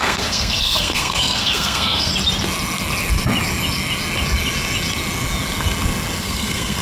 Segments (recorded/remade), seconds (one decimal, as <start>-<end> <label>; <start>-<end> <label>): 0.0-2.1 remade; 2.1-6.2 recorded; 6.2-6.8 remade